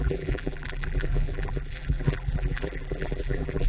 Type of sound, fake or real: fake